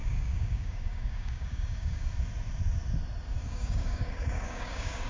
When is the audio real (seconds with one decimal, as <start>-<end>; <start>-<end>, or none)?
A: 2.1-3.4